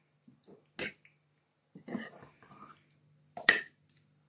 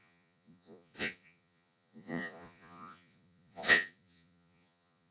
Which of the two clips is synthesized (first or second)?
second